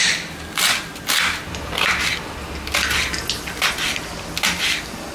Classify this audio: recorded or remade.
recorded